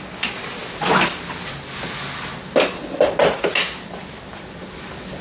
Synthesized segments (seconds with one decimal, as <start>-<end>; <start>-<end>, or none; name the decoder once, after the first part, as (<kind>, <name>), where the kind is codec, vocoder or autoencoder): none